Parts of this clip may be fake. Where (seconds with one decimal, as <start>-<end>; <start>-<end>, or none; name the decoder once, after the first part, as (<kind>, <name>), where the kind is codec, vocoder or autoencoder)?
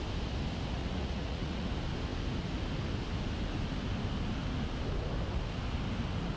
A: 0.8-1.7 (vocoder, Vocos)